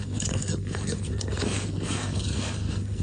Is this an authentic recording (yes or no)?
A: no